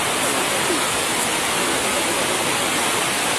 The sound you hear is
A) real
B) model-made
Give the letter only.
A